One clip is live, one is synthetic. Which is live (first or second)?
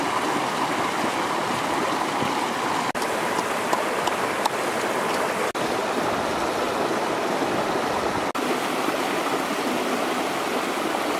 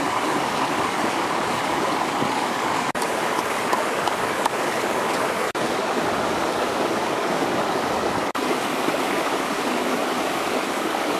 first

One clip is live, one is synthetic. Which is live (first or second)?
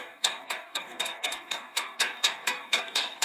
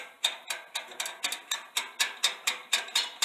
second